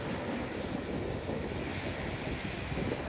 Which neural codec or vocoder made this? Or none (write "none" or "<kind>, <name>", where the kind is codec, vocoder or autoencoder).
none